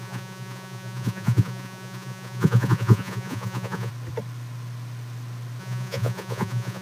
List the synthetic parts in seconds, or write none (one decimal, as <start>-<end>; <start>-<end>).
0.0-3.9; 5.6-6.8

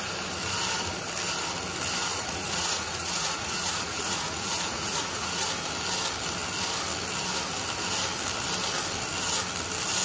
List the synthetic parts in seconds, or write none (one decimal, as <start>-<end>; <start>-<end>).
2.1-5.5

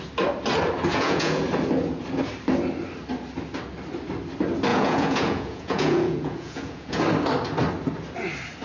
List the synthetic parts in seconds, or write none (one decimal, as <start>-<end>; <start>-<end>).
0.9-1.4; 4.7-7.0

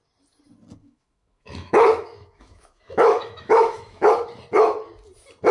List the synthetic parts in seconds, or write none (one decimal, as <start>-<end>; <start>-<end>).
0.8-4.1

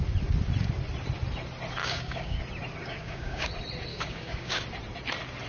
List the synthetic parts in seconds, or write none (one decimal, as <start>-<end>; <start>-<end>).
1.8-2.4; 2.8-3.5; 3.9-4.6

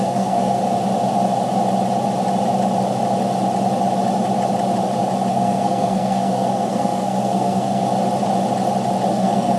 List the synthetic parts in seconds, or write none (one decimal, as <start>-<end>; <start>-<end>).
0.0-0.6; 5.3-7.8; 9.1-9.6